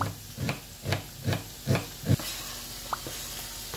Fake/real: real